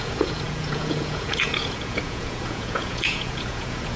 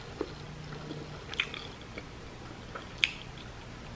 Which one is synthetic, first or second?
first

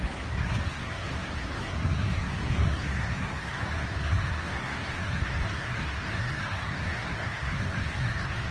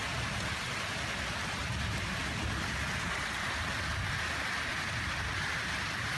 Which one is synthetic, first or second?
first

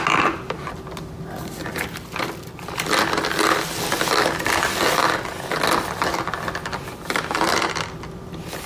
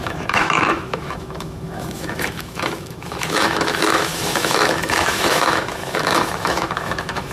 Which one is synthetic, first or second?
second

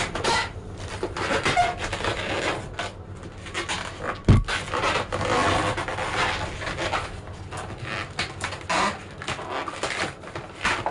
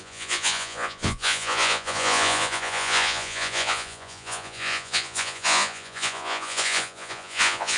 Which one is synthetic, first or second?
second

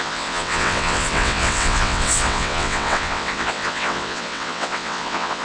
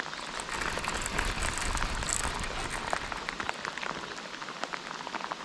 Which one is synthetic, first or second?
first